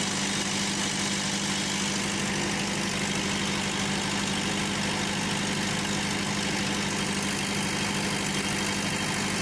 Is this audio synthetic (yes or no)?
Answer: no